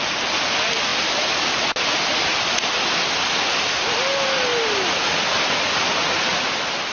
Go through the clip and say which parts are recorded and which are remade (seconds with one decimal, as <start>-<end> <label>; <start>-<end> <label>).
0.0-6.9 recorded